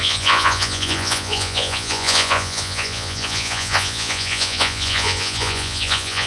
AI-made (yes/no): yes